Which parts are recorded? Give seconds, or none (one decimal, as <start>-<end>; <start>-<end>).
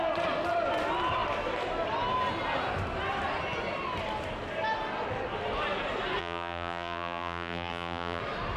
0.0-6.2; 8.2-8.6